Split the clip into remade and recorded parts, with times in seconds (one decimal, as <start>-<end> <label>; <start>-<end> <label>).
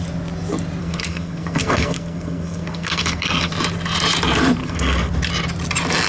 0.0-0.8 recorded; 0.8-3.5 remade; 3.5-4.6 recorded; 4.6-5.1 remade; 5.1-6.1 recorded